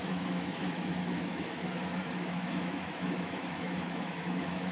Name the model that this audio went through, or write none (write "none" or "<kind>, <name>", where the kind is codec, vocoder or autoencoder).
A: autoencoder, DAC-VAE